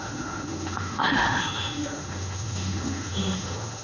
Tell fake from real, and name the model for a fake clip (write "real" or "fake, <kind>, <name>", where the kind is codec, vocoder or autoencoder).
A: fake, autoencoder, DAC-VAE